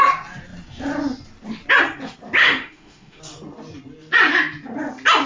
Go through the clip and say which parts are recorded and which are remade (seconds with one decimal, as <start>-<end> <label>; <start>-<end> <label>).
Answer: 0.0-2.4 recorded; 2.4-3.2 remade; 3.2-5.3 recorded